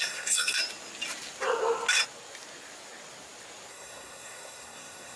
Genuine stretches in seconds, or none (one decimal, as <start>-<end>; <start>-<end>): 0.6-3.7